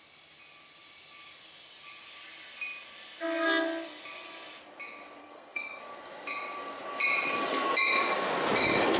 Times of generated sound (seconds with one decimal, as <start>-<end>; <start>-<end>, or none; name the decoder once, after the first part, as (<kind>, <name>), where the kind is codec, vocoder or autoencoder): 5.2-5.8 (codec, SNAC)